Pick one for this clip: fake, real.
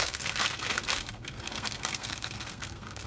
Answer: fake